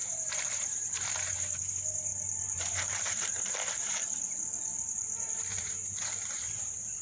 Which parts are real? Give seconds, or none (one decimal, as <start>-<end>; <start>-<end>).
1.7-2.1; 4.3-4.7

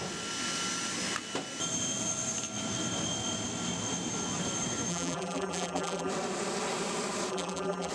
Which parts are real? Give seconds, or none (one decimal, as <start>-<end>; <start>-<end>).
0.0-4.9; 6.1-7.3

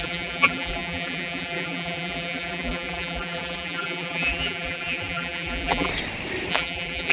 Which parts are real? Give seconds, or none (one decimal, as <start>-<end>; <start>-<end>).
5.9-6.5

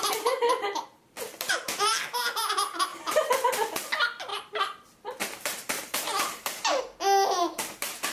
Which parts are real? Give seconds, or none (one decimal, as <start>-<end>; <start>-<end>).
0.0-2.9; 3.5-4.3; 6.8-8.1

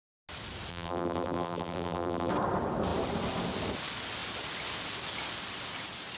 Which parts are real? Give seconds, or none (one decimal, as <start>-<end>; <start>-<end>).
0.0-0.7; 2.3-6.2

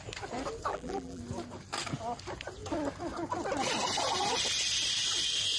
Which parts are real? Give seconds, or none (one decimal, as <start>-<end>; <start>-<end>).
0.0-0.7; 1.2-5.6

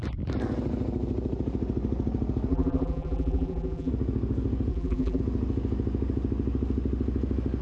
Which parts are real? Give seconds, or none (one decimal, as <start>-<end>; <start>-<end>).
0.0-2.5; 3.9-4.7; 5.2-7.6